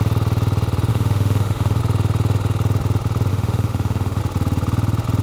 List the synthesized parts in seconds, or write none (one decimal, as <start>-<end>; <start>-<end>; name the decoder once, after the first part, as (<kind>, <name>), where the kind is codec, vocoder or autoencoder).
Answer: 0.9-1.8 (autoencoder, DAC-VAE); 3.3-4.2